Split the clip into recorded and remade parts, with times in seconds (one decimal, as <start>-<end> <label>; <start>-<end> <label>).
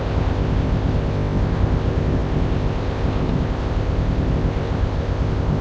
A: 0.0-5.6 remade